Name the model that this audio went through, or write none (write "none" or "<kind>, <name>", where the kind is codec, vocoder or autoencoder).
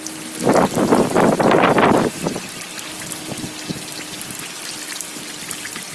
none